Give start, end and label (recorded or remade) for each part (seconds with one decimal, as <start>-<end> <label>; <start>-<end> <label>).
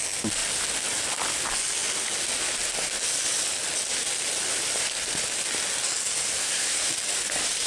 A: 0.0-6.4 recorded; 6.4-6.9 remade; 6.9-7.7 recorded